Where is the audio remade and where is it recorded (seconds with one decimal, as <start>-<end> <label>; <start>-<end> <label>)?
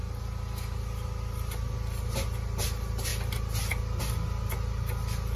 0.0-5.4 recorded